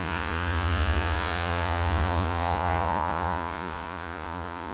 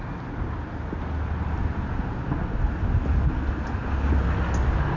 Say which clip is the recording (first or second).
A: second